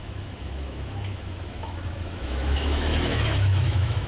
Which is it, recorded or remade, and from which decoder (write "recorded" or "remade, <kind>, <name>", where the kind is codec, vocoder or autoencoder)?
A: remade, autoencoder, DAC-VAE